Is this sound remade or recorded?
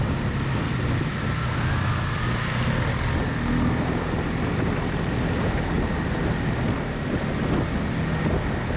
recorded